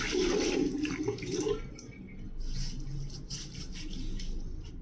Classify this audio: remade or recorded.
recorded